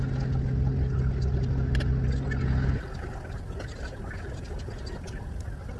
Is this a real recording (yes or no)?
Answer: yes